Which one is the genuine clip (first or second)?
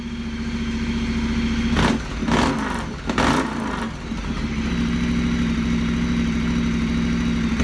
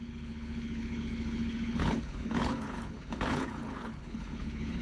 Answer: first